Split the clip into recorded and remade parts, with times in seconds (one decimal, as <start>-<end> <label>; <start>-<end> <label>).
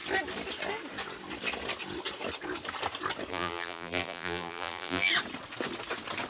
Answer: 0.0-3.3 recorded; 3.3-5.1 remade; 5.1-6.3 recorded